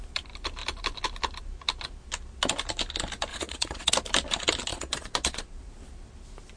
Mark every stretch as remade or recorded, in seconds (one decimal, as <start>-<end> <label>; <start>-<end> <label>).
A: 0.0-3.3 recorded; 3.3-3.9 remade; 3.9-4.7 recorded; 4.7-5.7 remade; 5.7-6.6 recorded